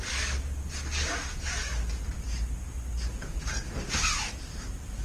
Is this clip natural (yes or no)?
yes